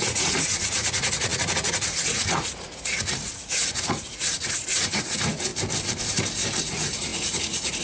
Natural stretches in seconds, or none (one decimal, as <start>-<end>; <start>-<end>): 5.5-6.6